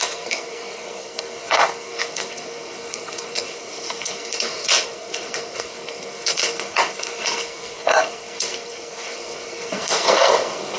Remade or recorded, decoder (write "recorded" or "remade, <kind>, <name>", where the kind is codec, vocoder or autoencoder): remade, codec, SNAC